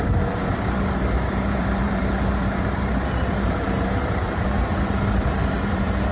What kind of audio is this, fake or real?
fake